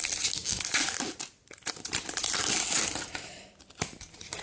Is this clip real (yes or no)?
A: yes